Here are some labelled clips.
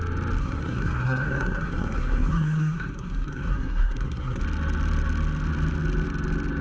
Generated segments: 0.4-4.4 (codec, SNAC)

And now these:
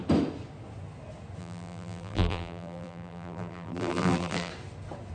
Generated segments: 1.4-4.5 (vocoder, BigVGAN v2)

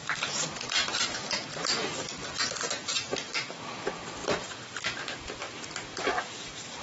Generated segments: 0.0-6.8 (vocoder, BigVGAN v2)

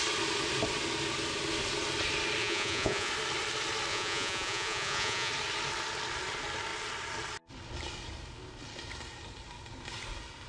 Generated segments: 2.4-3.1 (vocoder, Vocos); 3.9-5.3

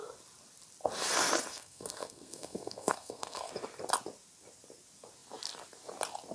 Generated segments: 1.5-3.5 (codec, SNAC)

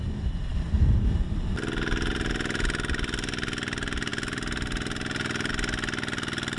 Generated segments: none